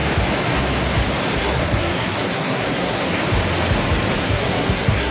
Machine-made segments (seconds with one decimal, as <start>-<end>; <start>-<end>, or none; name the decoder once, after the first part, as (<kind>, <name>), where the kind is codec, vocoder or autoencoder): 1.4-3.0 (codec, SNAC); 4.2-5.1